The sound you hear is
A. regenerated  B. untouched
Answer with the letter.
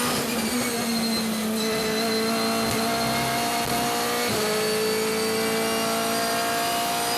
B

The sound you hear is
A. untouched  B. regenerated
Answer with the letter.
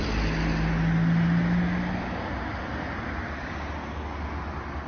A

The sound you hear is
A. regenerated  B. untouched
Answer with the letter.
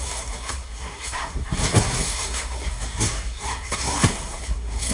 A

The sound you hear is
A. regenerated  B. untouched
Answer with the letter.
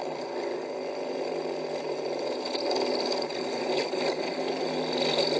B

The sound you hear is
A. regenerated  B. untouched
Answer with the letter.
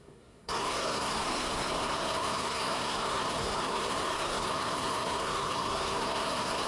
A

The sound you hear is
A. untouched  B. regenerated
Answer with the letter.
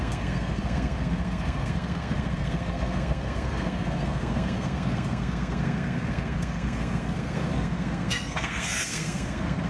B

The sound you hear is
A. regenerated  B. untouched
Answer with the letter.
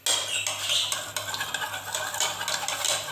B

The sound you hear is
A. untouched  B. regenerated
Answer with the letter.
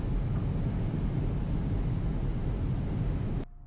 A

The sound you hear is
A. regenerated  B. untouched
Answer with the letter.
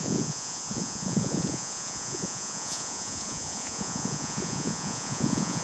A